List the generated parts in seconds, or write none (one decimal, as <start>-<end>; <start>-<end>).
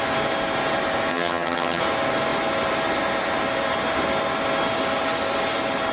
1.1-1.8